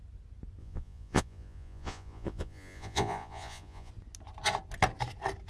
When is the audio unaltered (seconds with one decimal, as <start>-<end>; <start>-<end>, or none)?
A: 0.0-0.6; 3.9-5.5

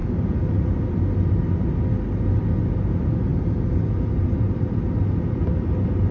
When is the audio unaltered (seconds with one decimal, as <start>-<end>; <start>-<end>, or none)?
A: 0.0-6.1

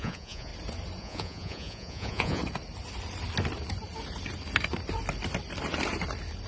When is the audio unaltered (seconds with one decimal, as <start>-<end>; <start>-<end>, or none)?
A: 0.5-1.0; 2.4-6.5

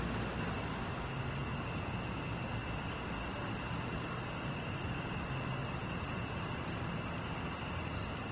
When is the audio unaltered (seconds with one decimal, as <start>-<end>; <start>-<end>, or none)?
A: 0.0-1.4; 2.2-5.8; 6.4-8.3

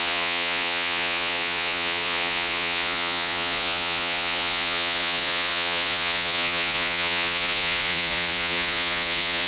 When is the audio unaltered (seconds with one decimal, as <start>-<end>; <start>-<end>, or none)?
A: none